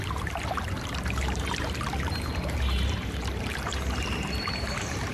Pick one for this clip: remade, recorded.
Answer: remade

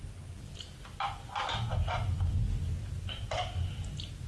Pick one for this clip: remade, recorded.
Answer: recorded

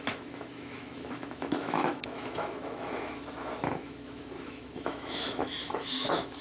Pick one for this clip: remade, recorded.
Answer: remade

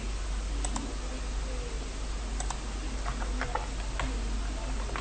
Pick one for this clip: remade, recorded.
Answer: recorded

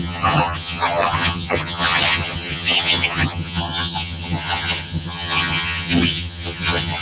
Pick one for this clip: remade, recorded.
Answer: remade